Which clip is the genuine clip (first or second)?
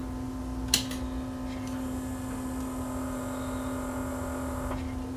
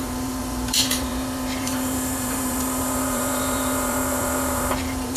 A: first